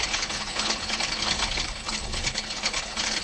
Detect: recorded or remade remade